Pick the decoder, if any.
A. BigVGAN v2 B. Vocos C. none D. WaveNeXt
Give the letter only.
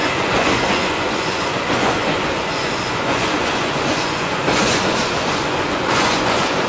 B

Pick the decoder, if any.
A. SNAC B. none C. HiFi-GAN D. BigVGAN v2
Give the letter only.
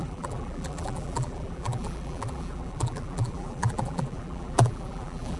D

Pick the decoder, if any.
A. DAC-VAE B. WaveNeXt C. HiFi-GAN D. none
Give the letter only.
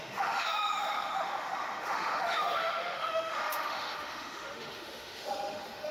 A